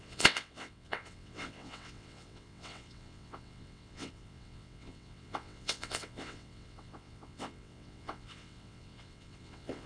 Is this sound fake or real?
fake